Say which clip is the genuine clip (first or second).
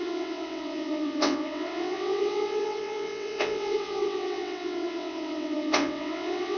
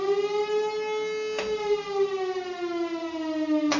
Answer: second